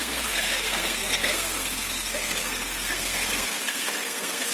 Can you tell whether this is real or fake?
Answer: fake